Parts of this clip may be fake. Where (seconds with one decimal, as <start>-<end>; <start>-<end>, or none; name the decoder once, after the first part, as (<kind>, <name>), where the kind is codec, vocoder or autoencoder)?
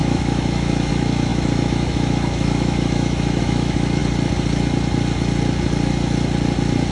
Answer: 0.0-4.0 (autoencoder, DAC-VAE)